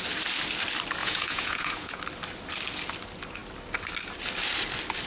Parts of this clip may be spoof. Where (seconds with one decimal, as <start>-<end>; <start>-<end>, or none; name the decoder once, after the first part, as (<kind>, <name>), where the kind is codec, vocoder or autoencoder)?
1.0-2.0 (vocoder, Vocos)